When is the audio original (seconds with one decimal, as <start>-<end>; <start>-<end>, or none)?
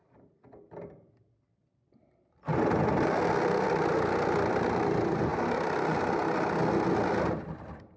0.0-8.0